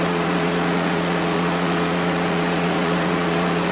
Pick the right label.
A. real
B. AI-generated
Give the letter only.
B